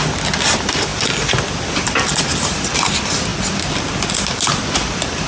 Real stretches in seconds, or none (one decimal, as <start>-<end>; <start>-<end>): 0.0-5.3